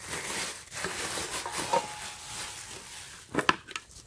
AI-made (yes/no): no